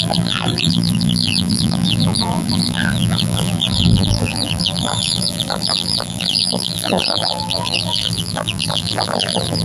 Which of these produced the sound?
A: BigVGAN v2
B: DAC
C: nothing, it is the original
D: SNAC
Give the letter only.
A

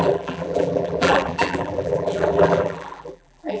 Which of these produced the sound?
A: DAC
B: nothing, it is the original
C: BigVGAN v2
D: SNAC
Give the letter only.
C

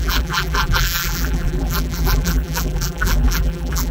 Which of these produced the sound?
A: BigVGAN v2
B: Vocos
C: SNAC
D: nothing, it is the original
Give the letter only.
A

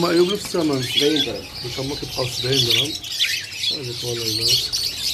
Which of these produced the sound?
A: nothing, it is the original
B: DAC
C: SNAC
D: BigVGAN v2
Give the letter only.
A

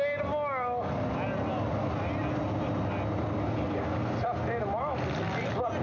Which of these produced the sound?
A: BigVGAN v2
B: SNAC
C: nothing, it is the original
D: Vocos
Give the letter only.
C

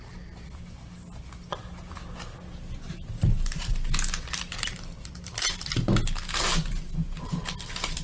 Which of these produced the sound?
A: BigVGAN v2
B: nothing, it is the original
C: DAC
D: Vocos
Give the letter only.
B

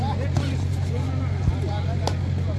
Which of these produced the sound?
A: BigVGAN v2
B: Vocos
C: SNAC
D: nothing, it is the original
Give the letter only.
D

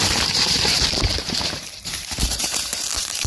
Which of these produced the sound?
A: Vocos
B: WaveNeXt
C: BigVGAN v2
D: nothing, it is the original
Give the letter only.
C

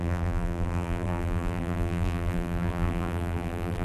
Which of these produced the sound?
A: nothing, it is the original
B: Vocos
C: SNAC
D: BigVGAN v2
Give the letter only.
D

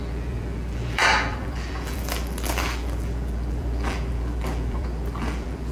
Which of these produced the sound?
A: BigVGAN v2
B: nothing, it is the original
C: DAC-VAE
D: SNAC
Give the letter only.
A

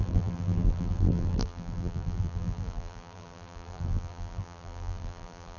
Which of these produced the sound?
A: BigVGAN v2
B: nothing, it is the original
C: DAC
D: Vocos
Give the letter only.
A